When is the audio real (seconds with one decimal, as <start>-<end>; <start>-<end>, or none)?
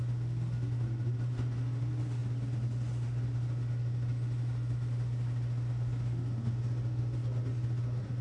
0.0-8.2